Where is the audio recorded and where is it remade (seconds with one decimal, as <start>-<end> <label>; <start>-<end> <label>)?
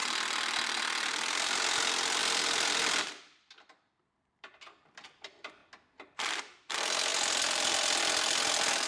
0.0-0.9 recorded; 0.9-5.6 remade; 5.6-6.4 recorded; 6.4-8.9 remade